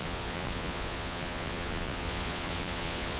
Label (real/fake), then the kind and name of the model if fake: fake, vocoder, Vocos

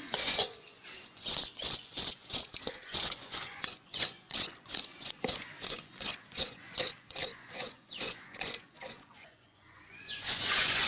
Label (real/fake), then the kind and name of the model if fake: fake, vocoder, Vocos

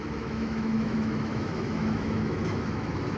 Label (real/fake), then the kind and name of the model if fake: fake, autoencoder, DAC-VAE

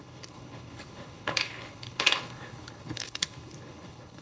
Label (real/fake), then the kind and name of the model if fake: fake, codec, HILCodec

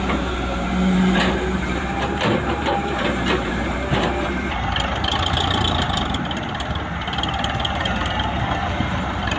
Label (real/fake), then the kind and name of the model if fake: fake, vocoder, BigVGAN v2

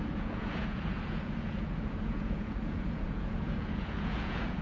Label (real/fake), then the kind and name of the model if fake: fake, vocoder, Vocos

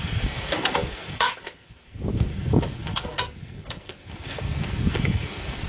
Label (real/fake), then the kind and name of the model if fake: fake, codec, SNAC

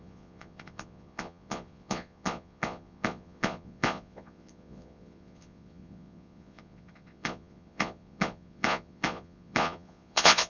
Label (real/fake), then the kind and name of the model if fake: fake, vocoder, Vocos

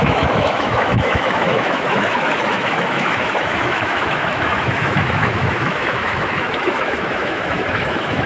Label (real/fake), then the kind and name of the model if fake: fake, autoencoder, DAC-VAE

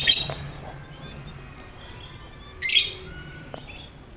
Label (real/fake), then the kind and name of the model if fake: real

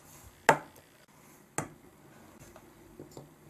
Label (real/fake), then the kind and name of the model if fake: real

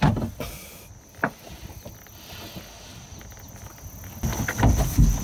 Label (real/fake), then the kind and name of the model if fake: real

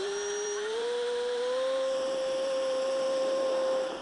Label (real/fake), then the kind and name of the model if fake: fake, vocoder, BigVGAN v2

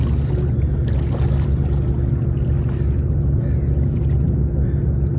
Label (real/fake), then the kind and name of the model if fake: real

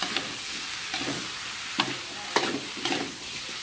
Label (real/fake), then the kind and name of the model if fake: real